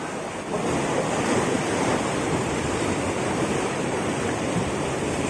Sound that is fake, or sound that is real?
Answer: fake